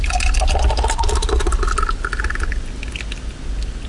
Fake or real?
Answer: real